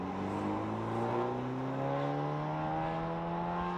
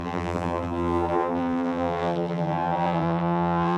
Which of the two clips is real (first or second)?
first